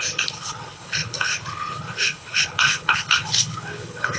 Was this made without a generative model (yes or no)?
no